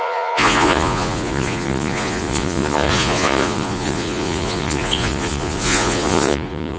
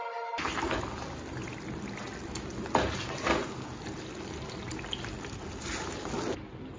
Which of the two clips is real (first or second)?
second